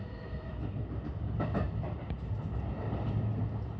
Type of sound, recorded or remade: recorded